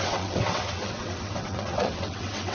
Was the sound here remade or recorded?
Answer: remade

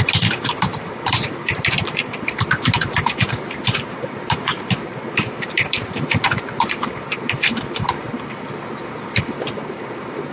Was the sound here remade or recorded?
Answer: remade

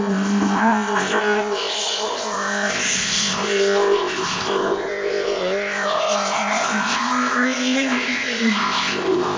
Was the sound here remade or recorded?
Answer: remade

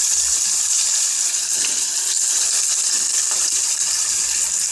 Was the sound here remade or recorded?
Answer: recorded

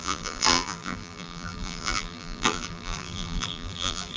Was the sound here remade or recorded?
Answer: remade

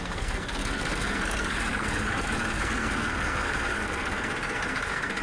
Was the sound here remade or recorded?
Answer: remade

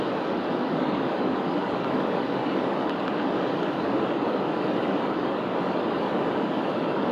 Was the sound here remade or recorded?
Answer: remade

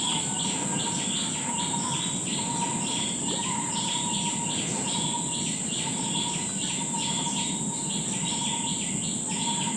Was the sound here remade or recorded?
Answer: recorded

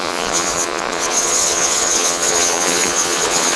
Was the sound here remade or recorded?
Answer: remade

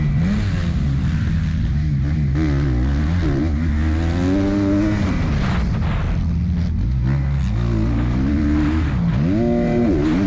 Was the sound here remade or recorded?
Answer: recorded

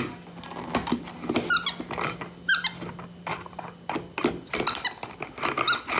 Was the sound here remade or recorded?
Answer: recorded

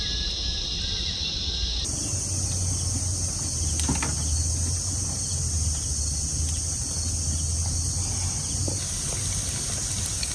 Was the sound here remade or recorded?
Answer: recorded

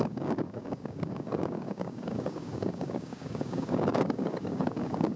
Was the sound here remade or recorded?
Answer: remade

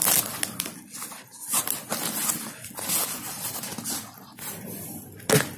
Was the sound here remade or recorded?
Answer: recorded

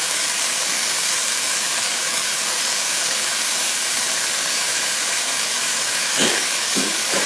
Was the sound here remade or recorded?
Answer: remade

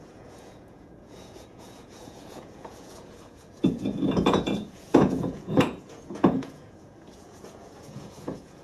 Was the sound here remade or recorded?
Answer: remade